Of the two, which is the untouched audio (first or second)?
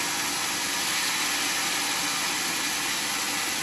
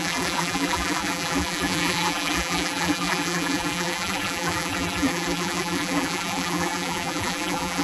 first